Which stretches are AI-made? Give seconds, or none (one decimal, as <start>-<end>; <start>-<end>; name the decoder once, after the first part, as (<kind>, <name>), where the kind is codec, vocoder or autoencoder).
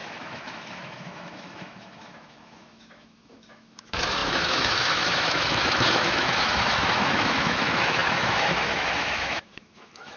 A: 0.0-10.2 (autoencoder, DAC-VAE)